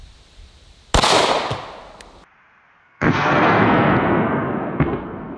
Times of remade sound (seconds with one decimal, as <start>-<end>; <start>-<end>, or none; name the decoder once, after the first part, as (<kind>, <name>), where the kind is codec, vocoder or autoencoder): 2.8-5.4 (codec, SNAC)